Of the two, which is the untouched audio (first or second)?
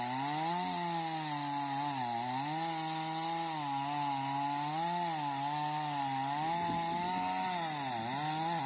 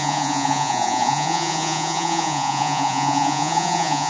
first